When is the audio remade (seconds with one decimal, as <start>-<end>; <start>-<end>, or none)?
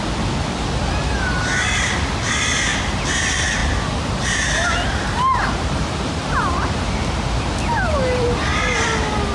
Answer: 1.0-1.9; 3.6-7.5